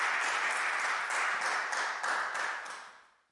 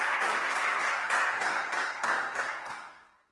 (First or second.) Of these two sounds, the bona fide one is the first